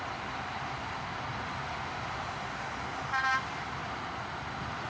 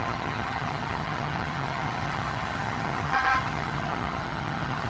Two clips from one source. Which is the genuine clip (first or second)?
first